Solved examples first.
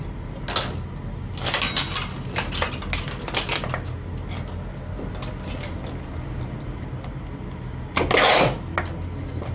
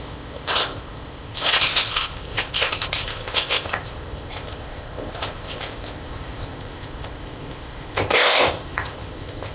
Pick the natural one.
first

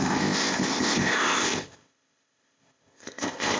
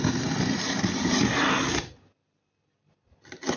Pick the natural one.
second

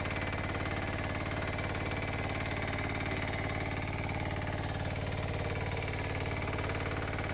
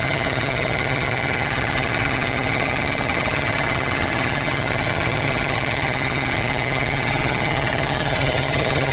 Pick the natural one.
first